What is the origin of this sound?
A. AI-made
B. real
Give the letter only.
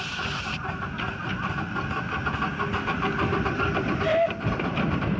B